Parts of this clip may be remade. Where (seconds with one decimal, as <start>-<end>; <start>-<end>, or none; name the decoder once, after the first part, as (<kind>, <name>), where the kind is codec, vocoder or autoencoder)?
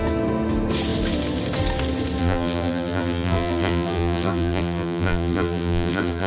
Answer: 2.2-6.3 (vocoder, BigVGAN v2)